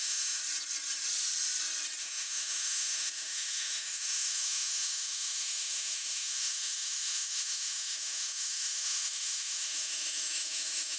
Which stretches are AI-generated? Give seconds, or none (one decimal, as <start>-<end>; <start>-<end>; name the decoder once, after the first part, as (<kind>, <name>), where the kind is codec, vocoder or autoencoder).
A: 0.0-0.4 (autoencoder, DAC-VAE); 2.0-11.0